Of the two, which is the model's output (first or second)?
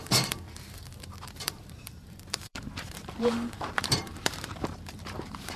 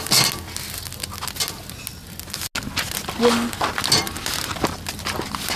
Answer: first